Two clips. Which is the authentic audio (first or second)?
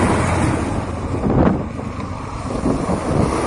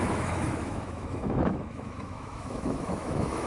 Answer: first